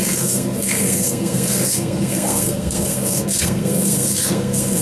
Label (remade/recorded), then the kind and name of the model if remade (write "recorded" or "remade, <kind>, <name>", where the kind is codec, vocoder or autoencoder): remade, codec, SNAC